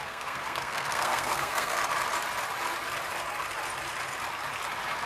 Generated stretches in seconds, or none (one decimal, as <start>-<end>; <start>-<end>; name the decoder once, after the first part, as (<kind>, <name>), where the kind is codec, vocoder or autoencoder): 0.0-1.8 (codec, SNAC)